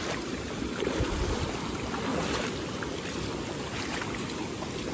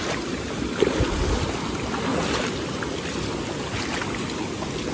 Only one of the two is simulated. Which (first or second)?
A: first